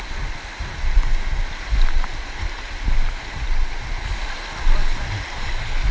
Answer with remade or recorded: recorded